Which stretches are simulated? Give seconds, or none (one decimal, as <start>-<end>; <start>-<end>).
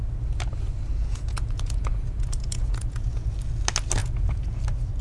1.0-3.3; 4.0-4.6